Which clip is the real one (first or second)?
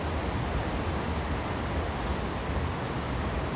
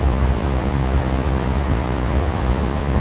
first